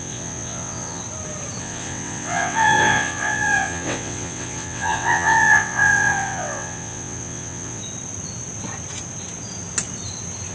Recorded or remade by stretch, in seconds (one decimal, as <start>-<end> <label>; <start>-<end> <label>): 0.0-1.0 remade; 1.0-1.6 recorded; 1.6-7.8 remade; 7.8-10.5 recorded